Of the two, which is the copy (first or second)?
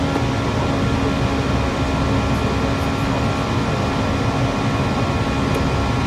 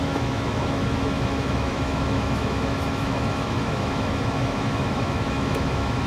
second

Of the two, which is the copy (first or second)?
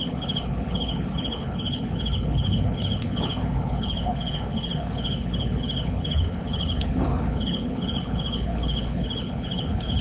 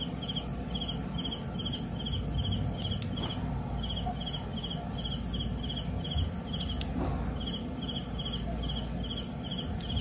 first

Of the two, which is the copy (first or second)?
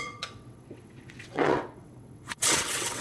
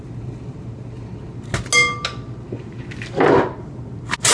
first